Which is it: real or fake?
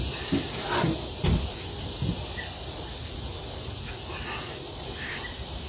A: real